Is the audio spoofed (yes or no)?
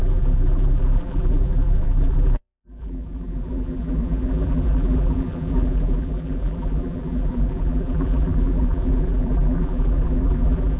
yes